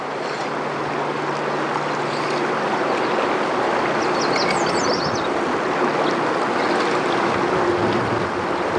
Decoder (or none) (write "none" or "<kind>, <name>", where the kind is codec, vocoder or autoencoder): none